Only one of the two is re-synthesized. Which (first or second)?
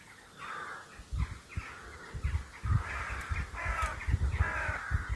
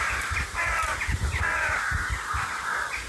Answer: second